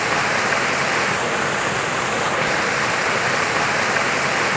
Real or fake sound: real